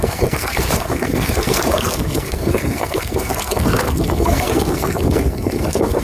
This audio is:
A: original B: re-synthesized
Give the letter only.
B